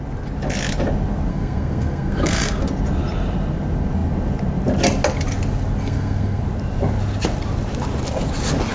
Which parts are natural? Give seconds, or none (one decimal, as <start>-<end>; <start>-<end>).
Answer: 0.0-1.3; 2.6-5.8; 6.4-8.7